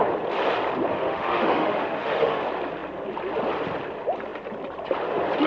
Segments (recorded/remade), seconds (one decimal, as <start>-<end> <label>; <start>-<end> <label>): 0.0-0.9 recorded; 0.9-2.4 remade; 2.4-5.5 recorded